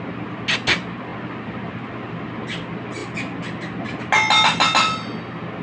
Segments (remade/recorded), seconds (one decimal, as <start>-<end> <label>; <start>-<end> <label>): 0.0-5.6 recorded